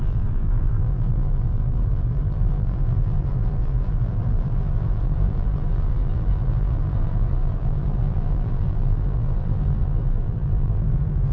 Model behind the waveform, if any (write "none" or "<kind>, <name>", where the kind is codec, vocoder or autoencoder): vocoder, BigVGAN v2